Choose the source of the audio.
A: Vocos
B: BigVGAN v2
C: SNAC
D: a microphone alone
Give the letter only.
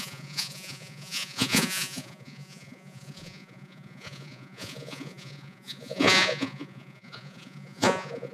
A